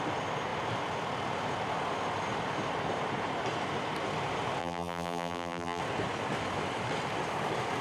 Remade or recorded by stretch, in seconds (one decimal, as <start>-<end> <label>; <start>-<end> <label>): 0.0-4.6 recorded; 4.6-5.8 remade; 5.8-7.8 recorded